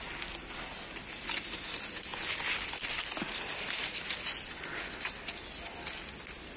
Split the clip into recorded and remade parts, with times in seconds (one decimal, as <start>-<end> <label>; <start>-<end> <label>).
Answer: 0.0-6.6 recorded

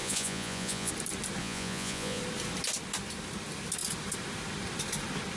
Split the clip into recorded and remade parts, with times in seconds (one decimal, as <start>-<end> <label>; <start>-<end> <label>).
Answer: 0.0-0.9 remade; 0.9-1.4 recorded; 1.4-2.2 remade; 2.2-5.4 recorded

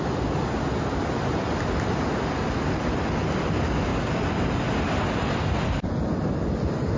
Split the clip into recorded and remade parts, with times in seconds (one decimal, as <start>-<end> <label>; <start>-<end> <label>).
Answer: 0.0-7.0 recorded

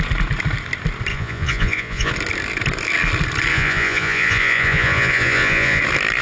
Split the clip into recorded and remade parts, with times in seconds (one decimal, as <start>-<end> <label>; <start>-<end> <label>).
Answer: 0.0-1.1 recorded; 1.1-2.1 remade; 2.1-3.5 recorded; 3.5-5.8 remade; 5.8-6.2 recorded

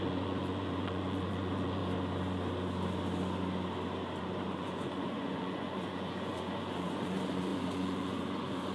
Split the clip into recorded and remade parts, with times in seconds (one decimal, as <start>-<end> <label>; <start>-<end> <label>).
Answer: 0.0-1.8 remade; 1.8-4.2 recorded; 4.2-8.7 remade

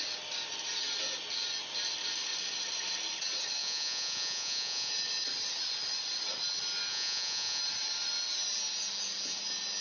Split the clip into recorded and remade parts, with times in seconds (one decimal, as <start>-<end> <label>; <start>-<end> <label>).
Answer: 0.0-3.6 recorded; 3.6-4.9 remade; 4.9-6.9 recorded; 6.9-7.6 remade; 7.6-9.8 recorded

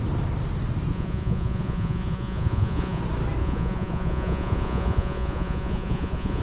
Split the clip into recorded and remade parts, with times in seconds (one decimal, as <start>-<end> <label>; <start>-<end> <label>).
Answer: 0.0-0.9 recorded; 0.9-3.0 remade; 3.0-3.4 recorded; 3.4-6.4 remade

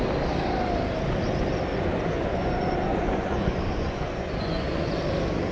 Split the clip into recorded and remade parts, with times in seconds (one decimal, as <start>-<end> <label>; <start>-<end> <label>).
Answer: 0.0-1.7 recorded; 1.7-5.0 remade; 5.0-5.5 recorded